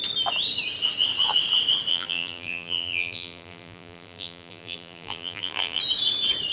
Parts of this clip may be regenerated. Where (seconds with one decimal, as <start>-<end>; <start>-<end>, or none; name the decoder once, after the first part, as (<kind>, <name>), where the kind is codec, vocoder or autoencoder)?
1.9-5.8 (vocoder, BigVGAN v2)